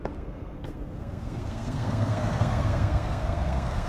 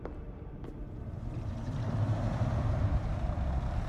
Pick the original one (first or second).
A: second